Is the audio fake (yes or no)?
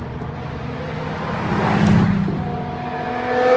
no